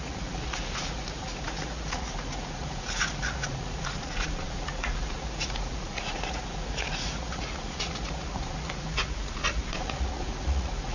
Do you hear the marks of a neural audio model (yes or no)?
yes